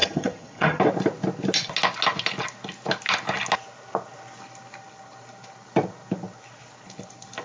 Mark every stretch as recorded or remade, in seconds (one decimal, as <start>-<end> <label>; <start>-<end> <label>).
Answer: 0.0-0.8 remade; 0.8-7.4 recorded